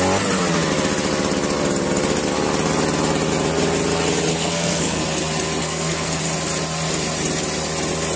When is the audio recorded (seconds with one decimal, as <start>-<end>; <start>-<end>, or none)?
0.0-4.3; 5.0-5.6; 6.2-8.2